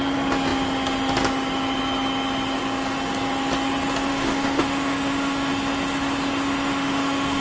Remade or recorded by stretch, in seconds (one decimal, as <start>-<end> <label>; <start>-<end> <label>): 0.0-4.1 recorded; 4.1-5.5 remade; 5.5-6.7 recorded; 6.7-7.4 remade